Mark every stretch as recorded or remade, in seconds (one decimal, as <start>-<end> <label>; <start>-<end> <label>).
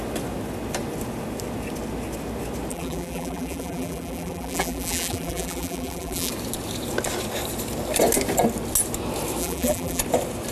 0.0-2.7 recorded; 2.7-6.3 remade; 6.3-9.4 recorded; 9.4-10.0 remade; 10.0-10.5 recorded